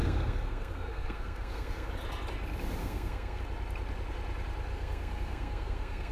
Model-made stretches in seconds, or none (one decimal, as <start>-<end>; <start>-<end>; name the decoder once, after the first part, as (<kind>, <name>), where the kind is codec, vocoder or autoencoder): 0.0-1.9 (codec, SNAC); 2.8-3.4; 4.7-6.1